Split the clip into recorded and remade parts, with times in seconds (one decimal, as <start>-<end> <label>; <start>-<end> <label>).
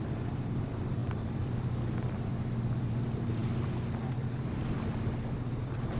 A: 0.0-3.4 remade; 3.4-6.0 recorded